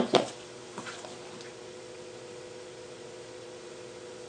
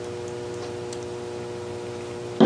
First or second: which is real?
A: second